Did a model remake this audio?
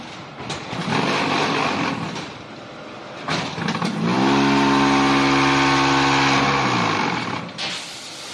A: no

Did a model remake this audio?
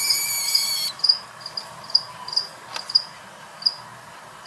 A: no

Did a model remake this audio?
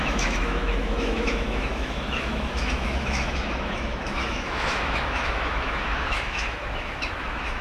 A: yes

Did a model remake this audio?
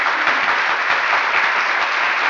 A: no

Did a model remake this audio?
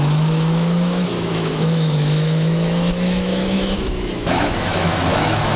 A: yes